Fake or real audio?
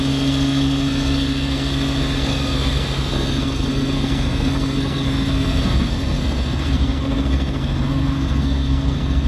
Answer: fake